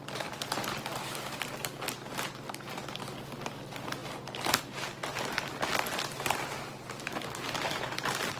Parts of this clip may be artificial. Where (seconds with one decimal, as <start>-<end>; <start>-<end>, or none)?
none